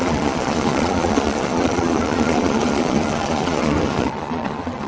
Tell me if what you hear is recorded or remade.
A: remade